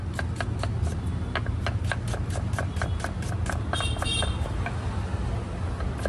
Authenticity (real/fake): real